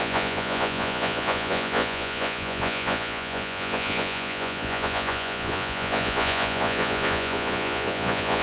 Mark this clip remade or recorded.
remade